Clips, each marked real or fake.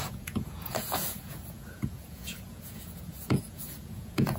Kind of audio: fake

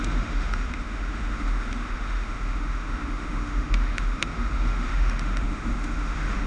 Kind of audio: fake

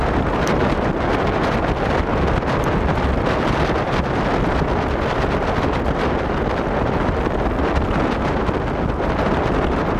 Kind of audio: real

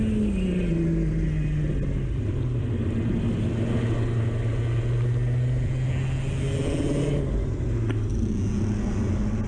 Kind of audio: real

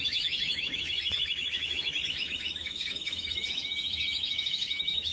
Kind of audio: fake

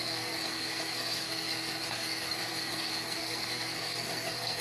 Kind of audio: fake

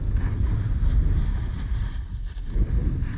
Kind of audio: real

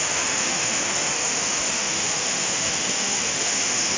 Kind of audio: fake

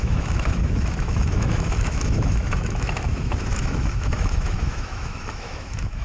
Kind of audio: fake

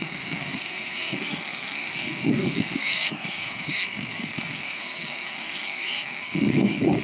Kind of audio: fake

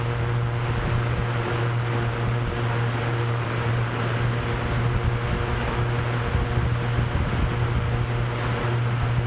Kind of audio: real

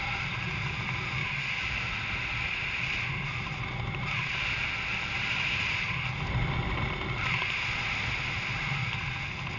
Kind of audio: real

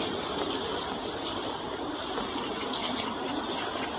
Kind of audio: real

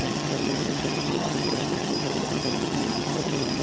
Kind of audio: fake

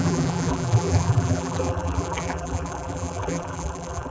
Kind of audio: fake